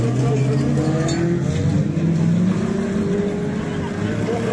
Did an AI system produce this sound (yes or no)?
no